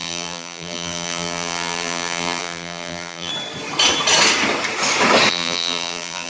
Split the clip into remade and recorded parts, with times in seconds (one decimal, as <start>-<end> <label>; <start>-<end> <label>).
0.0-3.3 remade; 3.3-5.3 recorded; 5.3-6.3 remade